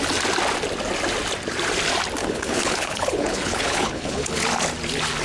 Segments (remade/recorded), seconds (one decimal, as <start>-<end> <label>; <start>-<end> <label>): 0.0-2.2 recorded; 2.2-4.4 remade; 4.4-5.2 recorded